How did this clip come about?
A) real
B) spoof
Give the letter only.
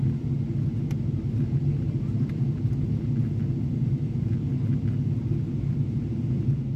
A